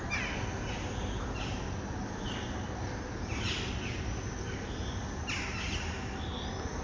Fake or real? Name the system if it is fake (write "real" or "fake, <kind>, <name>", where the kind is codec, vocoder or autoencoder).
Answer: real